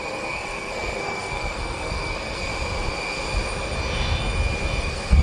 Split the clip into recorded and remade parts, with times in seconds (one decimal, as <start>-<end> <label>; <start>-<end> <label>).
0.0-2.5 remade; 2.5-4.8 recorded; 4.8-5.2 remade